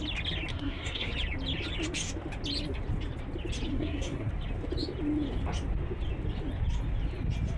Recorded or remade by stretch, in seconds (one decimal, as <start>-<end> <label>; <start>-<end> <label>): 0.0-0.5 recorded; 0.5-1.1 remade; 1.1-3.7 recorded; 3.7-4.3 remade; 4.3-7.6 recorded